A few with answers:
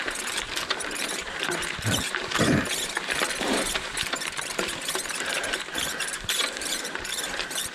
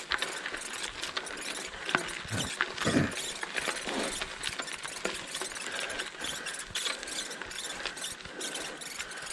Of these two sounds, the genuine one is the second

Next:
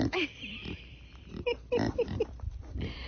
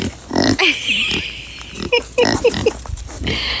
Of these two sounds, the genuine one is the second